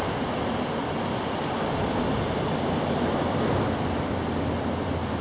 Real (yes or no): yes